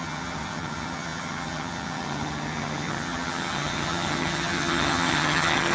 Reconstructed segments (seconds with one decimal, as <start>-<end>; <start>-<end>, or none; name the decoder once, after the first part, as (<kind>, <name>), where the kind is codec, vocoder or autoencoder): 0.0-5.7 (vocoder, HiFi-GAN)